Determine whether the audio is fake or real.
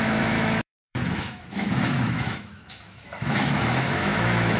fake